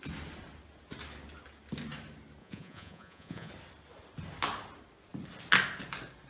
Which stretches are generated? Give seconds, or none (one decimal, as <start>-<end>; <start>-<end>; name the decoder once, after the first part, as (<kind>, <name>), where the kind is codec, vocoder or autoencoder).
2.4-3.5 (vocoder, Vocos)

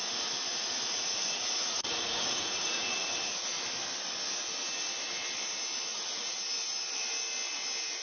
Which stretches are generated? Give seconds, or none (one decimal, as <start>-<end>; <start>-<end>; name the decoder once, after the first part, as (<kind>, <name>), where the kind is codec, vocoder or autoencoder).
0.5-3.3 (vocoder, Vocos); 5.9-6.4